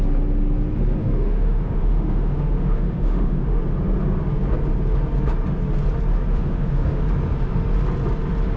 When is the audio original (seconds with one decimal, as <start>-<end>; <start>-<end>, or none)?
0.0-1.0; 3.6-6.3; 7.0-8.6